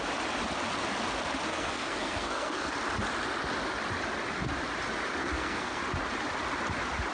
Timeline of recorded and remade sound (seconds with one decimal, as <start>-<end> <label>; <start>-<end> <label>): 0.0-1.5 recorded; 1.5-2.7 remade; 2.7-5.2 recorded; 5.2-5.8 remade; 5.8-7.1 recorded